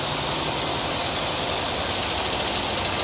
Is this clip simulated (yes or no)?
no